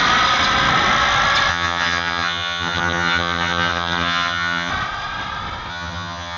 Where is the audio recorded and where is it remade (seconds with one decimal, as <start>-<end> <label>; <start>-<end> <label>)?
0.0-1.5 recorded; 1.5-4.7 remade; 4.7-5.7 recorded; 5.7-6.4 remade